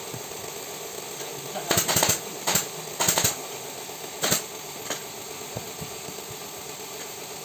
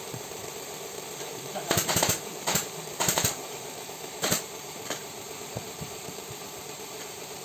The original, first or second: first